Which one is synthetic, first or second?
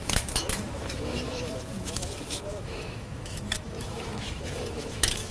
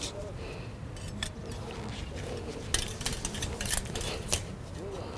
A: first